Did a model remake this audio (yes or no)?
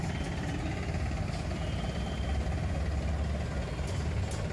no